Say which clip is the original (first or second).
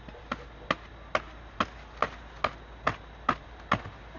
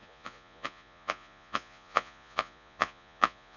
first